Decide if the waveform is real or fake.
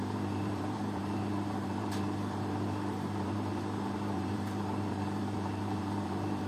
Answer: fake